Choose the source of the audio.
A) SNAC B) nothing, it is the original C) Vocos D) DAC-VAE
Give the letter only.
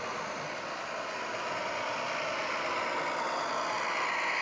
B